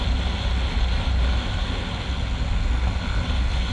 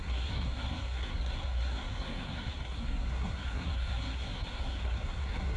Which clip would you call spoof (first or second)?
second